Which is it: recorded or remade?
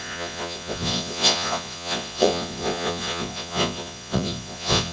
remade